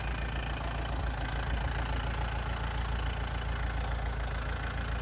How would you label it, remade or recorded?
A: recorded